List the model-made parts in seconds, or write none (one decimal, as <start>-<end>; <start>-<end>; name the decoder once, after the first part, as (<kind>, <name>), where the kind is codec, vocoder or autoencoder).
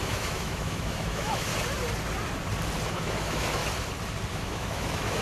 0.0-1.5 (autoencoder, DAC-VAE); 2.9-3.6; 4.3-5.2